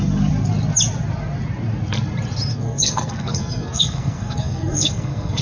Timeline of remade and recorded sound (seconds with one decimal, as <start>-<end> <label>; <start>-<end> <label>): 0.0-2.5 recorded; 2.5-5.4 remade